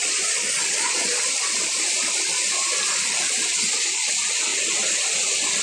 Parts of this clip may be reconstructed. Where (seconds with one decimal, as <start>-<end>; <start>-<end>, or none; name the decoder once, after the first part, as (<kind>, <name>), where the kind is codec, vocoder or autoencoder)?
0.0-1.1 (vocoder, Vocos); 3.5-4.1